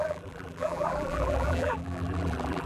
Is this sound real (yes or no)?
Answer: no